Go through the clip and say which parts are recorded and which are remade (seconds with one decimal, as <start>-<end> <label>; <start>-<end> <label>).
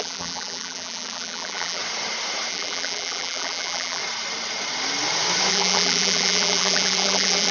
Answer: 0.0-1.8 remade; 1.8-2.5 recorded; 2.5-4.0 remade; 4.0-5.5 recorded; 5.5-7.5 remade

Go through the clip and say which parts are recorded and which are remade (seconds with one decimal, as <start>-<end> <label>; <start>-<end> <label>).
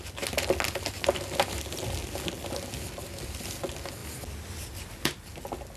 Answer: 0.0-5.8 recorded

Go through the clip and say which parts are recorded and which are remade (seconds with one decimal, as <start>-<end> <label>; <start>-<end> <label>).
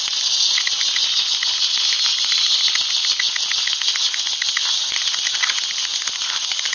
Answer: 0.0-2.1 recorded; 2.1-2.7 remade; 2.7-6.7 recorded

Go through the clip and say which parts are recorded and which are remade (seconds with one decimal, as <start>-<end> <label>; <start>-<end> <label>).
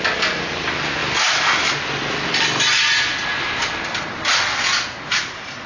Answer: 0.0-1.0 recorded; 1.0-1.7 remade; 1.7-3.3 recorded; 3.3-4.2 remade; 4.2-5.7 recorded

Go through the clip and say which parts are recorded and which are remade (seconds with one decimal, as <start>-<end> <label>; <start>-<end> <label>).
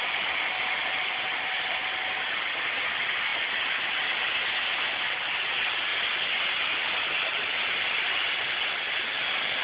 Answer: 0.0-9.6 recorded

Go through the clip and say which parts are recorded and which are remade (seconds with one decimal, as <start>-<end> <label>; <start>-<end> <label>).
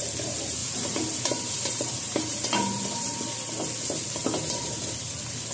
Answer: 0.0-0.6 recorded; 0.6-3.2 remade; 3.2-5.5 recorded